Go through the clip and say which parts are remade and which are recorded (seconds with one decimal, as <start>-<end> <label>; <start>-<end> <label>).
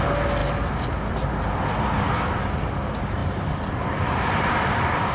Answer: 0.0-3.2 recorded; 3.2-5.1 remade